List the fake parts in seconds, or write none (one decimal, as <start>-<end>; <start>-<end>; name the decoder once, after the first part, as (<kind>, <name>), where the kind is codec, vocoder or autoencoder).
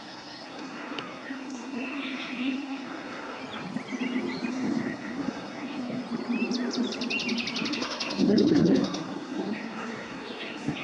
0.0-3.4 (codec, SNAC); 4.5-6.0; 7.7-10.8